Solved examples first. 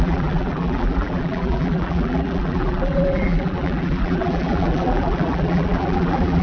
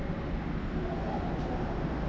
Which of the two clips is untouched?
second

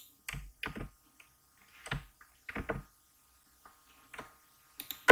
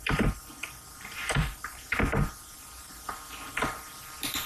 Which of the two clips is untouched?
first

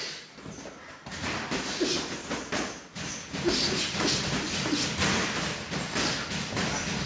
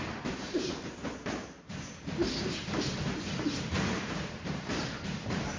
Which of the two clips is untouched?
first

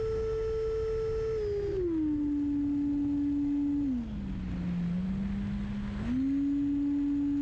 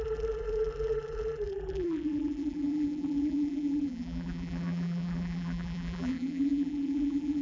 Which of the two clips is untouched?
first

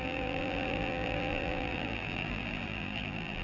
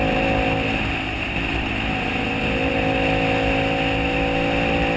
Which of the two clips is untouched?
second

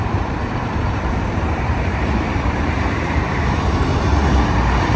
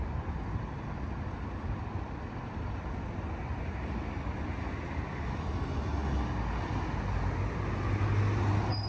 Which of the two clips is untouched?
second